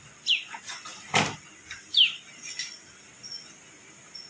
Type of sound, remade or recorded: recorded